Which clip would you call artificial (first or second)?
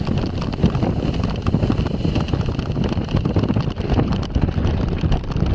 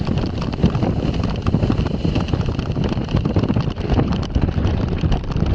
second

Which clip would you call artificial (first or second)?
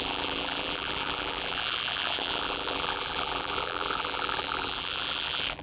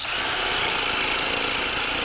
first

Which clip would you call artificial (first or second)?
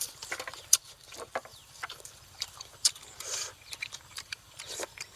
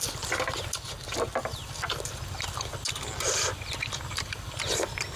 first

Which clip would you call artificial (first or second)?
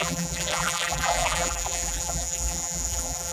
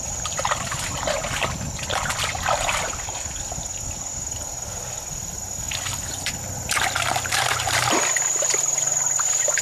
first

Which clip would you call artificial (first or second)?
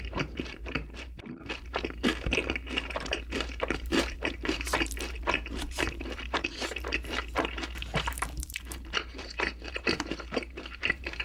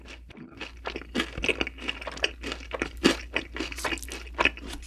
first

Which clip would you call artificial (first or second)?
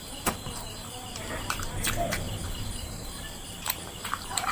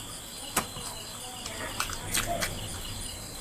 first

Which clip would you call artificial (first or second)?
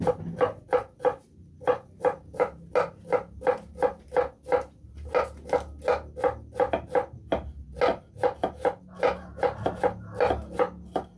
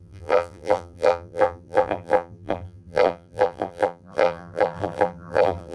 second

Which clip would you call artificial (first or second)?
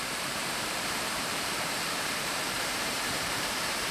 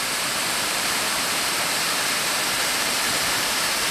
first